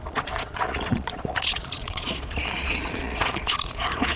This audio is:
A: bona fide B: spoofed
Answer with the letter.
B